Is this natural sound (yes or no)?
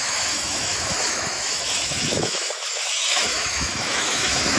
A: no